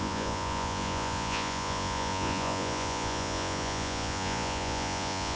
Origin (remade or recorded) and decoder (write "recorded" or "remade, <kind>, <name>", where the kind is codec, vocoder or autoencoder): remade, vocoder, Vocos